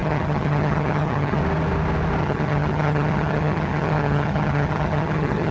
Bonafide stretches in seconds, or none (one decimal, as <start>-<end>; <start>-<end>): 1.4-2.2